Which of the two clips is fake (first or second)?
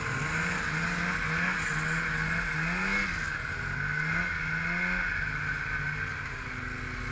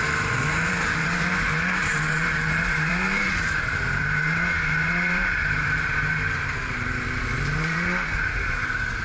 second